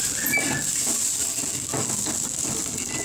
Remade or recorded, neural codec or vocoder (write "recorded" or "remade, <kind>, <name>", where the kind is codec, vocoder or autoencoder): recorded